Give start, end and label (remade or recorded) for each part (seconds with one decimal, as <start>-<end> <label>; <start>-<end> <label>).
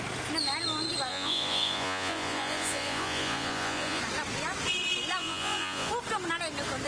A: 0.0-1.1 recorded; 1.1-4.0 remade; 4.0-5.2 recorded; 5.2-5.9 remade; 5.9-6.9 recorded